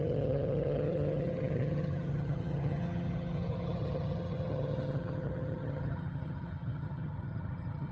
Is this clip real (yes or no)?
no